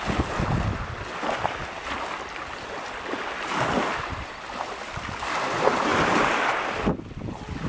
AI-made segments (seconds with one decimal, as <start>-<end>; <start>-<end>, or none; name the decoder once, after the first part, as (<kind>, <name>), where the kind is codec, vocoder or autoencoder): none